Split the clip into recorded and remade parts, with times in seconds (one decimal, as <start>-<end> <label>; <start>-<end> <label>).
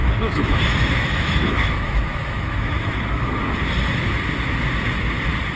0.0-3.3 remade; 3.3-5.6 recorded